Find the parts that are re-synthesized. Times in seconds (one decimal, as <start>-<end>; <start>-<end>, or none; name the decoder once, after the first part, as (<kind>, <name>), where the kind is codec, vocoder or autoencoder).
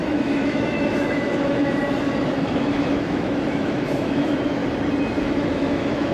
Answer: 0.0-1.8 (autoencoder, DAC-VAE); 2.3-4.6; 5.2-6.1